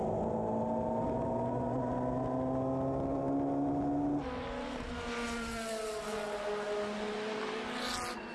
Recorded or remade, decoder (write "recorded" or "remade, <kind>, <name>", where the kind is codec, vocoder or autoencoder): recorded